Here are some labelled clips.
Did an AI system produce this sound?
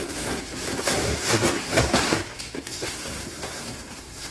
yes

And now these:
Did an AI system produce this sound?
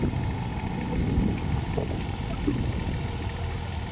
no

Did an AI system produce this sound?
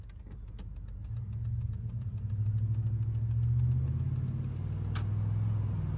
no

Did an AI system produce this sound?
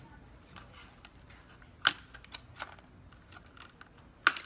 no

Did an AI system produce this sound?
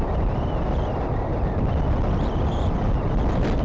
no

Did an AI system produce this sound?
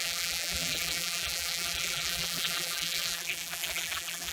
yes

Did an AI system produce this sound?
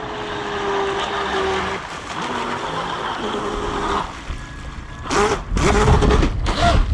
no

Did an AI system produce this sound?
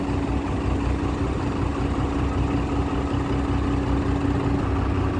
no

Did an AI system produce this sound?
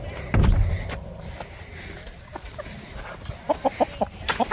no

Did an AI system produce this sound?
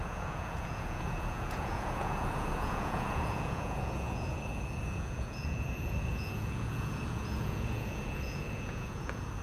yes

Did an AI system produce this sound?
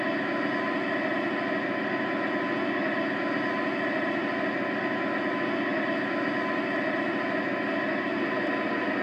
no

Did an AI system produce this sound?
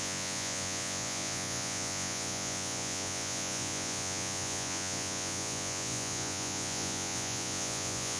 yes